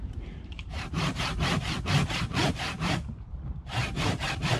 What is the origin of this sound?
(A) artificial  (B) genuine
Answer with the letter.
A